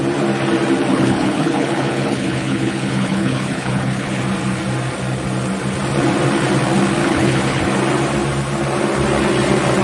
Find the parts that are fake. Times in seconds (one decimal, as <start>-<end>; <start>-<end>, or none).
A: 0.9-4.2; 7.0-7.6

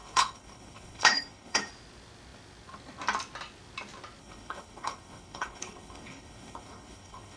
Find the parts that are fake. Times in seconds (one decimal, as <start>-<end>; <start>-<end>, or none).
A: 0.0-1.7; 4.2-7.4